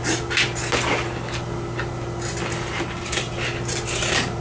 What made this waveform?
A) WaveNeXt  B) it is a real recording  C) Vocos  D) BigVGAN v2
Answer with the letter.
B